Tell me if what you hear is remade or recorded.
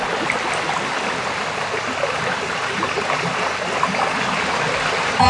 recorded